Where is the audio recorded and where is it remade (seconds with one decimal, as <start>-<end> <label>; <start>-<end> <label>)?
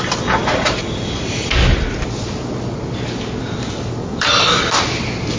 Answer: 0.0-4.0 recorded; 4.0-4.6 remade; 4.6-5.4 recorded